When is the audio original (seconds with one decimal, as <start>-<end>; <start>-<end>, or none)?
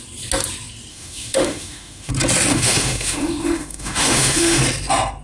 0.0-0.9; 2.1-2.5; 4.6-5.2